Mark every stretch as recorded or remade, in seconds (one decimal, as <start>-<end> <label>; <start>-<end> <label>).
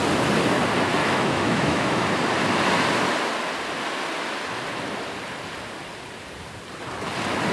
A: 0.0-1.0 recorded; 1.0-2.0 remade; 2.0-7.5 recorded